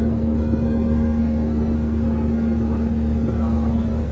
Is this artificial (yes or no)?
yes